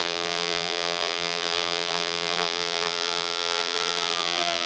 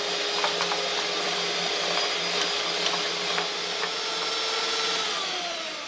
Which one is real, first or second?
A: second